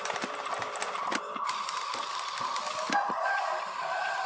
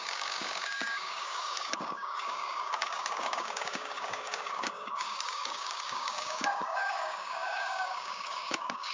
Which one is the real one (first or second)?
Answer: first